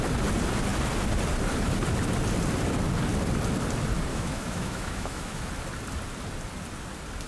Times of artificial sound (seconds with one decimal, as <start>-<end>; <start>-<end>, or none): 4.1-5.5